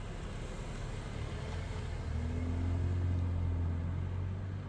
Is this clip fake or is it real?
real